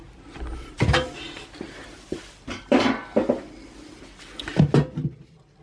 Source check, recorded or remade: remade